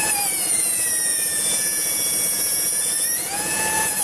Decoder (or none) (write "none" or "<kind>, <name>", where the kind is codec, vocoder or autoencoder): vocoder, Vocos